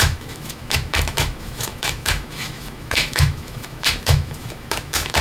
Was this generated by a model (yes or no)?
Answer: yes